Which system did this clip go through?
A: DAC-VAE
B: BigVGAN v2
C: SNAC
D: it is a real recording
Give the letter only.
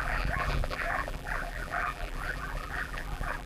B